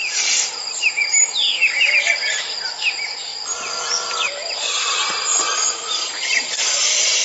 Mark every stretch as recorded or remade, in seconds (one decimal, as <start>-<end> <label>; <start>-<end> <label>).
0.0-1.8 remade; 1.8-3.3 recorded; 3.3-4.3 remade; 4.3-5.3 recorded; 5.3-7.2 remade